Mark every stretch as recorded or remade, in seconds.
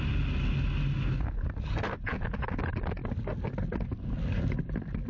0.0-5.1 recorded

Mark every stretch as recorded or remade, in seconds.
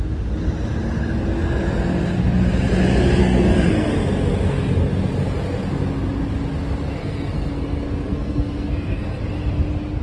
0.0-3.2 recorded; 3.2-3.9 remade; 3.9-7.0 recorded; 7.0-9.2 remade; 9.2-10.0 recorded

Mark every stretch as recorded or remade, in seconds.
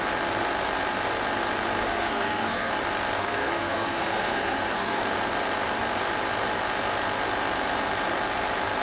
0.0-1.8 recorded; 1.8-2.7 remade; 2.7-3.2 recorded; 3.2-5.0 remade; 5.0-8.8 recorded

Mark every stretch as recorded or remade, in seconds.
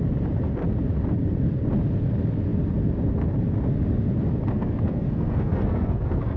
0.0-4.5 recorded; 4.5-6.4 remade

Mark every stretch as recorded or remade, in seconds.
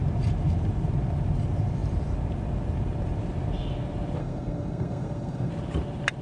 0.0-4.2 recorded; 4.2-5.5 remade; 5.5-6.2 recorded